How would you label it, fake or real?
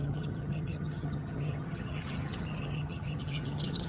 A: fake